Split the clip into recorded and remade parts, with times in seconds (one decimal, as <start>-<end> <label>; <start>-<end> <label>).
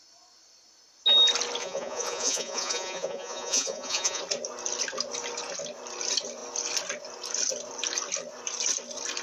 0.0-1.6 recorded; 1.6-4.2 remade; 4.2-9.2 recorded